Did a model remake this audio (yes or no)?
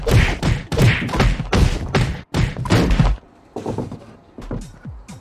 no